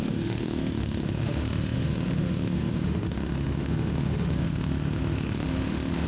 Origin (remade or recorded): remade